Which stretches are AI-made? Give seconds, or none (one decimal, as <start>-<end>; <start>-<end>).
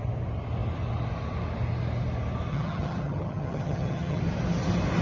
2.5-4.2